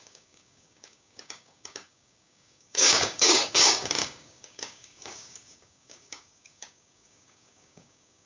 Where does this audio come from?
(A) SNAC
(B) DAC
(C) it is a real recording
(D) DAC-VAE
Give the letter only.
B